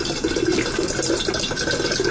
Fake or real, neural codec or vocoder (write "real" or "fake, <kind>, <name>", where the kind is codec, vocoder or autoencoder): real